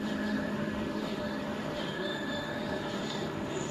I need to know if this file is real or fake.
fake